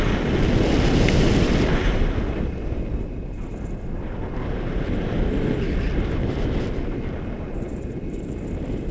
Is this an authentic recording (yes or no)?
yes